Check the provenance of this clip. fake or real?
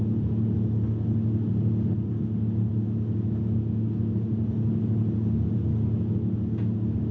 real